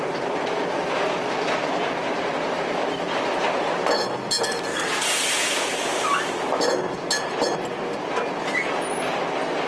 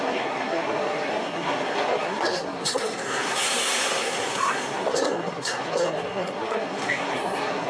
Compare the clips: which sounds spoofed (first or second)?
second